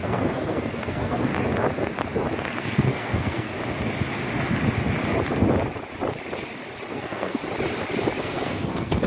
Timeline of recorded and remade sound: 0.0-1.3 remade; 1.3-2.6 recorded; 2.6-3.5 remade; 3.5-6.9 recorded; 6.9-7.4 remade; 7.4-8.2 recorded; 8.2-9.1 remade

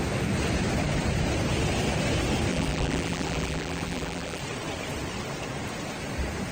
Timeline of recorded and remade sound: 0.0-2.5 recorded; 2.5-4.4 remade; 4.4-6.5 recorded